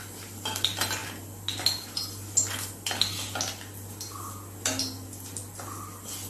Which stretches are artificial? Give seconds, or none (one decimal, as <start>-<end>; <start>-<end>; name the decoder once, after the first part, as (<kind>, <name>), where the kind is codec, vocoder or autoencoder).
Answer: none